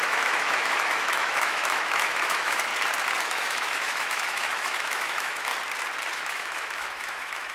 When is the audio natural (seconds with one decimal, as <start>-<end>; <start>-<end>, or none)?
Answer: 2.7-3.2; 5.5-6.1

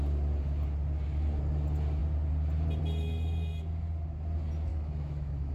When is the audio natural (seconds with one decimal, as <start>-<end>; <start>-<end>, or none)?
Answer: 0.0-4.7

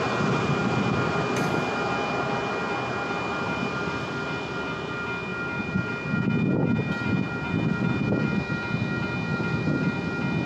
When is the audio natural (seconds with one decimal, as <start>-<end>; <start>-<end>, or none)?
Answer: 0.0-9.3; 10.0-10.5

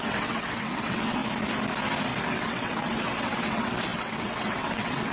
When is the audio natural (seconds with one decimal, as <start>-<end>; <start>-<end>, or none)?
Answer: 1.2-2.3

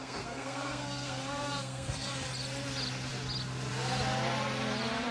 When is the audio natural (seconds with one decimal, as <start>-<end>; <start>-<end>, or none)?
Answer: 2.3-5.1

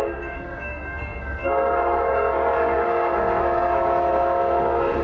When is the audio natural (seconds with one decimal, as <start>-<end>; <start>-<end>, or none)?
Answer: none